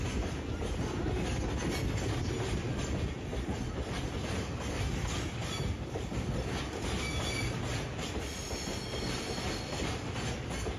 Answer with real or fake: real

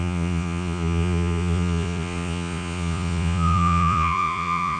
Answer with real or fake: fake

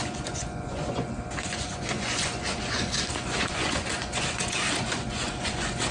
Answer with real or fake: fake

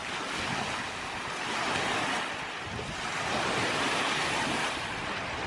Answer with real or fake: real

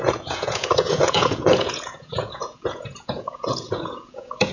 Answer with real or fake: fake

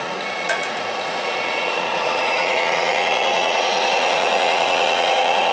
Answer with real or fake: fake